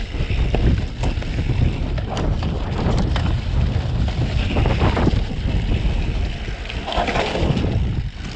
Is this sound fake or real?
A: real